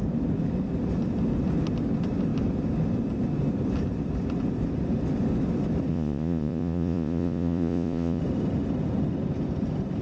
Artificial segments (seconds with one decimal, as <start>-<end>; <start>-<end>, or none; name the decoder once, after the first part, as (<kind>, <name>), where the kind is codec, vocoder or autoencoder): 5.9-8.2 (vocoder, Vocos)